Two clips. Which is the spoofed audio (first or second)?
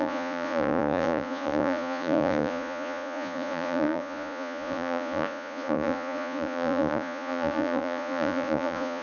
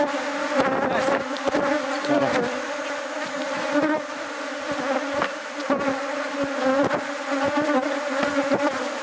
first